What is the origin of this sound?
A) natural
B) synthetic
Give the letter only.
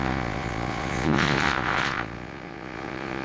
B